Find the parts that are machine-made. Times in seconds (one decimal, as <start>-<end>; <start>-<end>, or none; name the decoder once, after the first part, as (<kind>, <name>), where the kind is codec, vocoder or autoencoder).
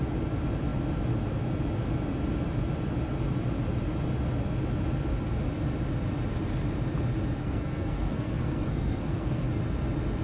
7.4-9.5 (codec, SNAC)